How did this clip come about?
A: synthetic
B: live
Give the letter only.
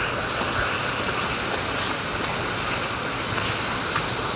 B